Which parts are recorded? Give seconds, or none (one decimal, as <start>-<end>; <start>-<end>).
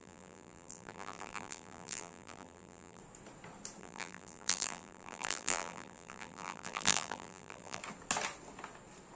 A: 3.0-3.8; 7.8-9.2